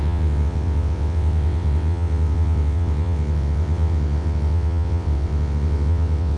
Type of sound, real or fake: fake